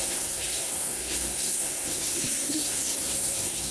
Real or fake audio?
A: fake